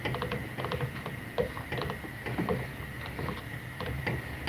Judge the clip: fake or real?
real